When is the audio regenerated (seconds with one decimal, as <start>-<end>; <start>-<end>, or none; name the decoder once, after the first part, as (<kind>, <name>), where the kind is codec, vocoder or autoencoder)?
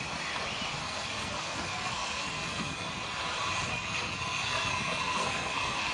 0.8-2.9 (codec, SNAC); 3.7-5.9